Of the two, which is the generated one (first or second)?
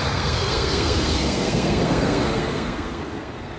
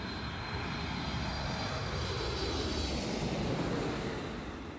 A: first